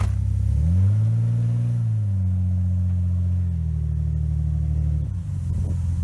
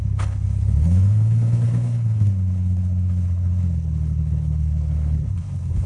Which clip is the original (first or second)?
first